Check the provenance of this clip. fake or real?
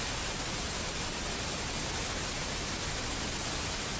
real